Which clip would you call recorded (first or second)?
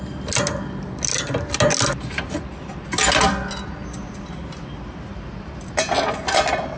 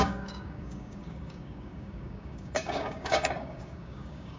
first